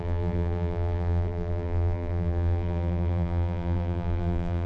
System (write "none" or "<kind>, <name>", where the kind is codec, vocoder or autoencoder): vocoder, BigVGAN v2